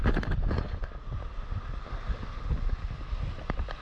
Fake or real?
real